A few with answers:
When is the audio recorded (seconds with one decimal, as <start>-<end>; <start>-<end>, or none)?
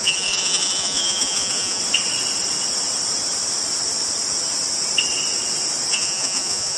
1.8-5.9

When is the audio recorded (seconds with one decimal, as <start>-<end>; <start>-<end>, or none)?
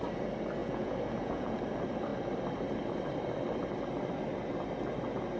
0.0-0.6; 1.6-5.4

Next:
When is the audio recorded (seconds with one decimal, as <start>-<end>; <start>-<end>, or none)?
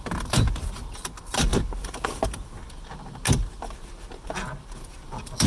1.5-4.8